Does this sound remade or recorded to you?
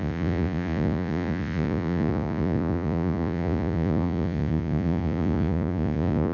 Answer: remade